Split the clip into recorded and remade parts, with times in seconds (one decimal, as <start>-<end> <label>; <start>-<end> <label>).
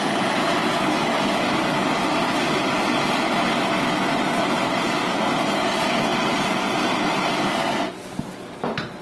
0.0-9.0 recorded